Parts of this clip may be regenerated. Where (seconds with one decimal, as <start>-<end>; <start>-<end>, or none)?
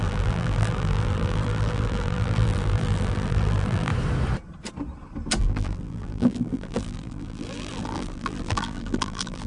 0.0-3.9; 5.4-9.5